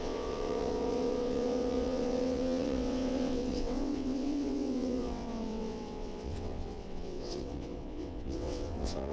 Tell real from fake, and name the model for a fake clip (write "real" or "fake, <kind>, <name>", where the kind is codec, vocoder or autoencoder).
fake, vocoder, WaveNeXt